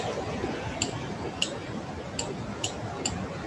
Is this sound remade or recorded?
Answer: recorded